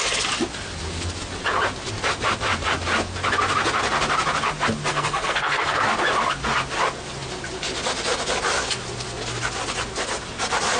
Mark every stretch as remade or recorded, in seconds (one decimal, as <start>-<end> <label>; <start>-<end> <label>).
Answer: 0.0-4.9 recorded; 4.9-5.8 remade; 5.8-10.8 recorded